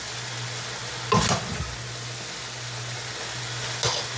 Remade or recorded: recorded